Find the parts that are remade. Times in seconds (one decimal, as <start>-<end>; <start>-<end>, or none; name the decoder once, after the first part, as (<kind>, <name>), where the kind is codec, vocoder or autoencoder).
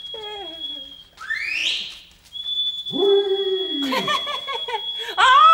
none